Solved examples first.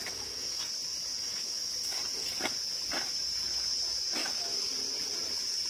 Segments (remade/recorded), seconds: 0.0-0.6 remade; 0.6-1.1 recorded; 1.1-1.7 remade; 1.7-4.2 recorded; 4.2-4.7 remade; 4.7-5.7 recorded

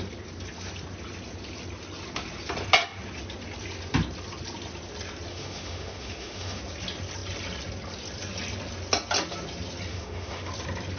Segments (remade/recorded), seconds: 0.0-5.3 recorded; 5.3-6.6 remade; 6.6-9.9 recorded; 9.9-10.5 remade; 10.5-11.0 recorded

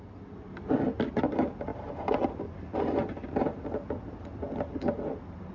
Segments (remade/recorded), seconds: 0.0-5.5 recorded

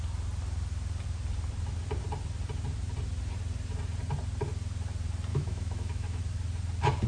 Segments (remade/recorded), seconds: 0.0-5.3 recorded; 5.3-6.2 remade; 6.2-7.1 recorded